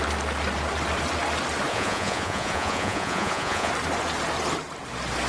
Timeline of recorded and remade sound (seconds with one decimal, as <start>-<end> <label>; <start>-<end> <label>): 0.0-1.7 recorded; 1.7-3.7 remade; 3.7-5.3 recorded